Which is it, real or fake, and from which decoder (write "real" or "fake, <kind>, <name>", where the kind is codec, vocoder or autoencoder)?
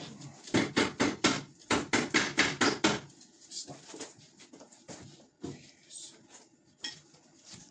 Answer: real